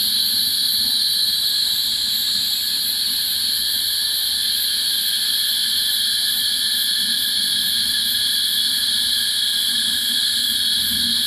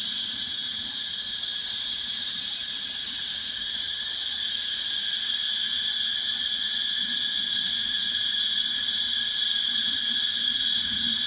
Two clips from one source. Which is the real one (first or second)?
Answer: first